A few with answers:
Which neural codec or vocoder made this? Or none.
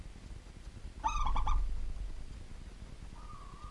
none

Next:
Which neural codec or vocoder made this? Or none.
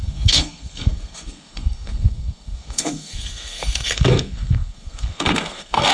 codec, SNAC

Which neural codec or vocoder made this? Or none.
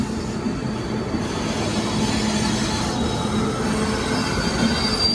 none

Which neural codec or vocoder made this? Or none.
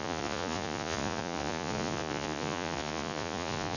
vocoder, Vocos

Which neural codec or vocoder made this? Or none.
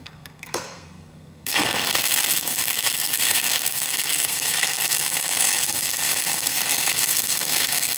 codec, SNAC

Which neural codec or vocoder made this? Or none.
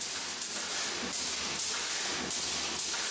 none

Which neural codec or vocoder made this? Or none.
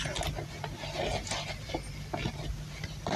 none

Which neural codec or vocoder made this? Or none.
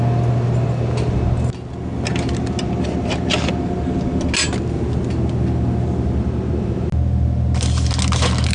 none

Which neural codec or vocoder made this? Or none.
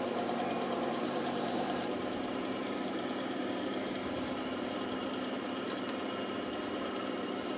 vocoder, BigVGAN v2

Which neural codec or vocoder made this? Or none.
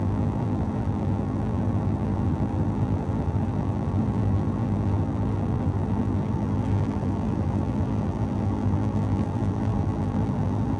vocoder, BigVGAN v2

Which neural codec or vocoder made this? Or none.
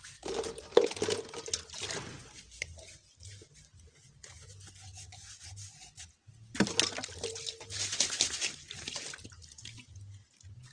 none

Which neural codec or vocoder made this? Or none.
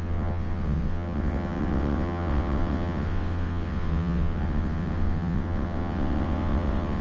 vocoder, WaveNeXt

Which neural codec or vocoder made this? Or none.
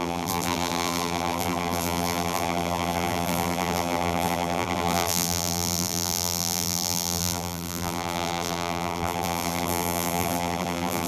vocoder, BigVGAN v2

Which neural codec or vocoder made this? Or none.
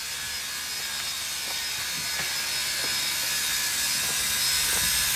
none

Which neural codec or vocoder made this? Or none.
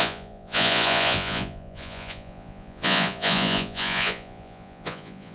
vocoder, Vocos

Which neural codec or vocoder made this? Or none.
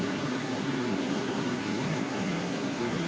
codec, SNAC